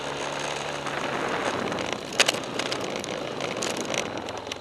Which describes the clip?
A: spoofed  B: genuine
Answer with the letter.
B